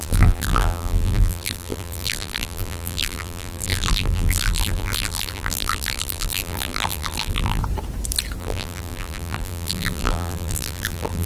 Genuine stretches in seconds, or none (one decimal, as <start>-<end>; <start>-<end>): 7.6-8.4

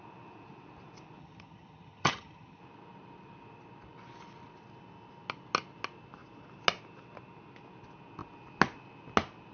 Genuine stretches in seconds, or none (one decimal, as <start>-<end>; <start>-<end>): 0.0-1.2; 2.6-9.5